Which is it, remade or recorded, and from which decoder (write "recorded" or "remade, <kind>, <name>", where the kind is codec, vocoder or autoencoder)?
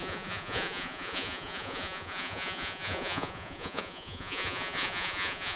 remade, vocoder, Vocos